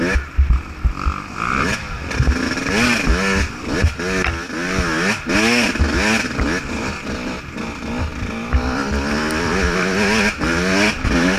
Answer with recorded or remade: recorded